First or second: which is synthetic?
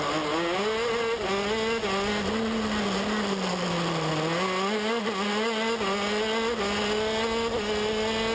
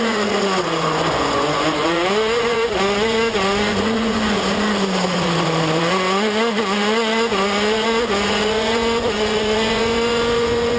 second